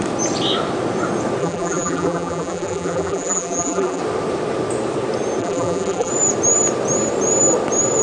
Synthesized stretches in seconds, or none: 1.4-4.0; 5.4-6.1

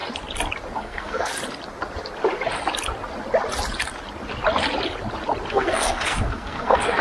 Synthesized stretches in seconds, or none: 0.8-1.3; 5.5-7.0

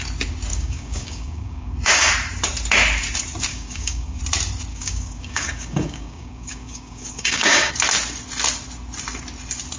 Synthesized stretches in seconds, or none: 0.5-2.1; 3.5-4.2; 4.7-7.7